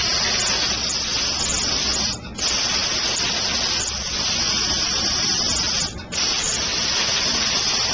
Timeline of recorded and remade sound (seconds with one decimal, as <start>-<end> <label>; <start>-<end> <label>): 0.0-7.9 recorded